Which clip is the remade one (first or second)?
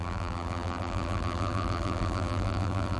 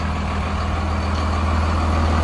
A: first